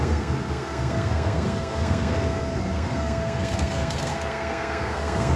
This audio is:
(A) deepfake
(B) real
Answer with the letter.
A